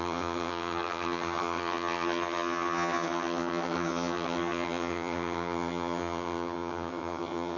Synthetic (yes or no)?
yes